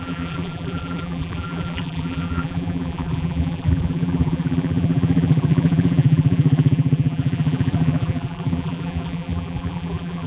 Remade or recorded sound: remade